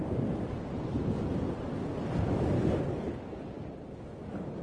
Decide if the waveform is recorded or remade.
recorded